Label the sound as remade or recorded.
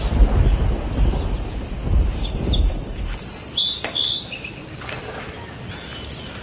recorded